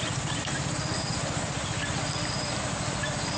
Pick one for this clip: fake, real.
real